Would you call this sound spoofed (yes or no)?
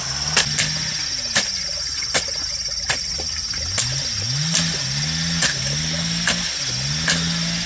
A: no